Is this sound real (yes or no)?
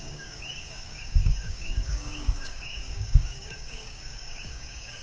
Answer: no